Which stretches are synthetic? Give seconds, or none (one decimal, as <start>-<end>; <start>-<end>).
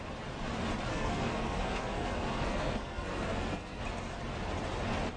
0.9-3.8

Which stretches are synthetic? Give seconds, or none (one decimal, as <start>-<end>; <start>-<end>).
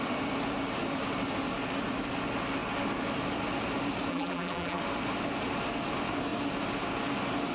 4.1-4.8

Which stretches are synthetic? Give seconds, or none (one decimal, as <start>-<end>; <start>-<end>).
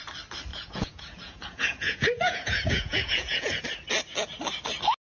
0.5-3.6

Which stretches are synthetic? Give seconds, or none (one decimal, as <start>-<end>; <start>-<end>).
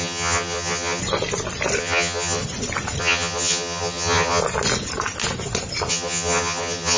0.0-1.0; 1.8-2.4; 3.0-4.4; 5.9-7.0